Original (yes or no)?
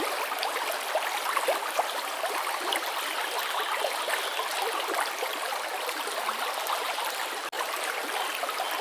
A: yes